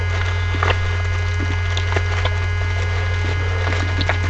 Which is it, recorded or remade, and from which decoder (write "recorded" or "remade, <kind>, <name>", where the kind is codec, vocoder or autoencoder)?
recorded